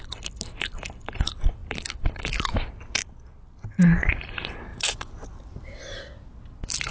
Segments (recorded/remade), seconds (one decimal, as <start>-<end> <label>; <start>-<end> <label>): 0.0-6.9 recorded